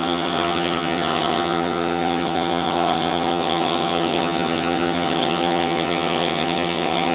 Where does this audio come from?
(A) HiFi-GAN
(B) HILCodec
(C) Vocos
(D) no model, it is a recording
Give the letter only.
A